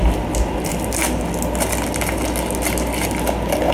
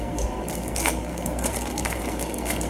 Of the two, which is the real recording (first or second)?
first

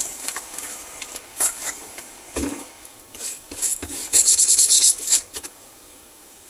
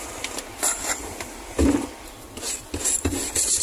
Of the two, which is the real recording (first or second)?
second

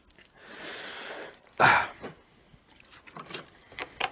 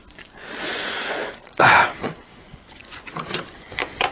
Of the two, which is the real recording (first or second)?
first